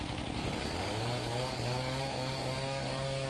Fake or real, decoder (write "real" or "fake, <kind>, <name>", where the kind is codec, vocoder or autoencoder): fake, codec, DAC